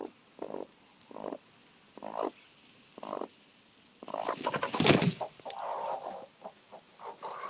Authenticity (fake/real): real